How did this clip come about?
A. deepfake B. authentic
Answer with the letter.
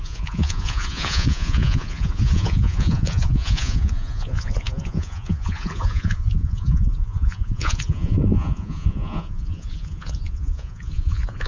A